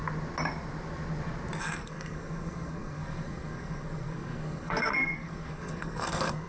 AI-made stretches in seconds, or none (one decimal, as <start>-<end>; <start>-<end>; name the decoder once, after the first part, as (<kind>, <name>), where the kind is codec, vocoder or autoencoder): 1.6-6.5 (codec, SNAC)

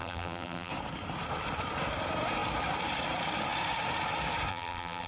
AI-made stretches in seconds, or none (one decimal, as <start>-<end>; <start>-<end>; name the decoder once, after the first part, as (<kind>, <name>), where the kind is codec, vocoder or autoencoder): 0.0-0.7 (vocoder, BigVGAN v2); 4.5-5.1

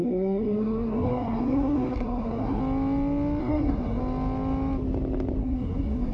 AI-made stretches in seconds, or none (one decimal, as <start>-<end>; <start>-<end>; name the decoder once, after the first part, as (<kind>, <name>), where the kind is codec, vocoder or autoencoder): 0.0-2.6 (codec, SNAC); 3.4-4.0; 5.4-6.1